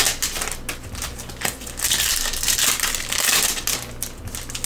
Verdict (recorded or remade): recorded